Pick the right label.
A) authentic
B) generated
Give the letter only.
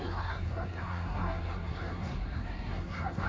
B